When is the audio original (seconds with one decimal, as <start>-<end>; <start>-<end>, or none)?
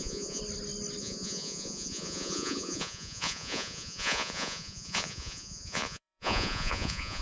0.4-1.0